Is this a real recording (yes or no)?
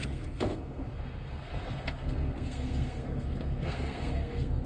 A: no